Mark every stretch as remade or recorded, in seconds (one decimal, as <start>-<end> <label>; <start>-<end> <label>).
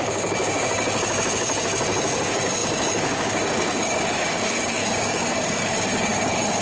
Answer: 0.0-6.6 remade